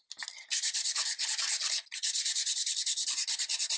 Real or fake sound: real